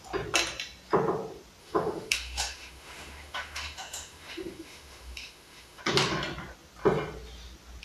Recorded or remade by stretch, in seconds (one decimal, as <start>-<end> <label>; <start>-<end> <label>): 0.0-1.6 recorded; 1.6-5.8 remade; 5.8-7.8 recorded